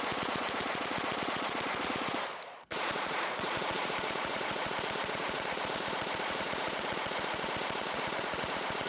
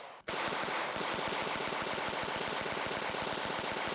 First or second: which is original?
second